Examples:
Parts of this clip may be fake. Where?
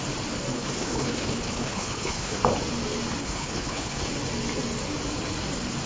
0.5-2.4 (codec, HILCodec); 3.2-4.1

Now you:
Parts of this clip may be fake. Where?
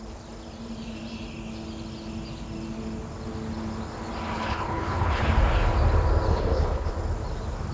4.3-5.3 (codec, HILCodec); 6.3-6.9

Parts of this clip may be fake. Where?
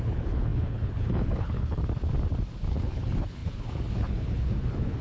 0.0-1.8 (codec, HILCodec); 2.7-5.0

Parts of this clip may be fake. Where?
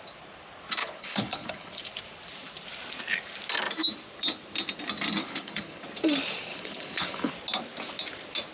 0.8-1.8 (codec, HILCodec); 5.2-5.8; 6.5-7.3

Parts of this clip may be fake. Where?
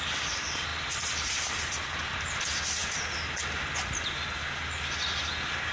none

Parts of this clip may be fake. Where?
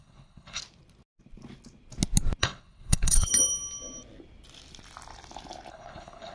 0.0-0.6 (codec, HILCodec); 2.4-3.3; 5.7-6.3